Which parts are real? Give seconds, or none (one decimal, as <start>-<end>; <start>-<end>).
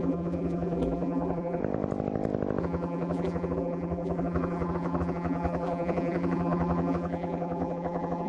1.6-2.6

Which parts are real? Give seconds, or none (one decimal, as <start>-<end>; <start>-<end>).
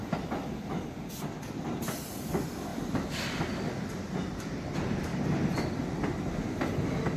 0.0-2.7; 3.4-7.2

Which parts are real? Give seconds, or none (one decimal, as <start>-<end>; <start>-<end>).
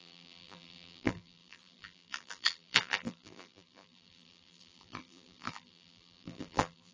none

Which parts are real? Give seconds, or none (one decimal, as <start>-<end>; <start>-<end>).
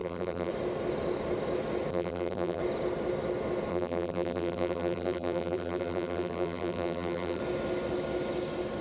0.5-1.9; 2.6-3.7; 7.4-8.8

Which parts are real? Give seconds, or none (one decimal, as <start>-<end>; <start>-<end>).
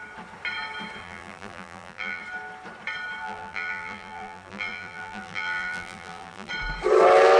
0.0-1.0; 2.2-3.2; 6.5-7.4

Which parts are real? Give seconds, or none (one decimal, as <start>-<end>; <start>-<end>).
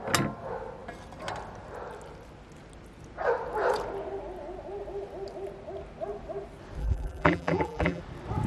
0.0-6.8; 8.0-8.5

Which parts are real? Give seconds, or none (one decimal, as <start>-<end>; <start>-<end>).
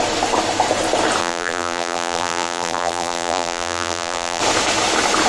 0.0-1.2; 4.4-5.3